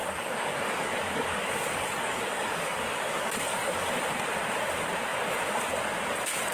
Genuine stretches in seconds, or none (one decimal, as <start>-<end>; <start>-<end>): 3.9-6.5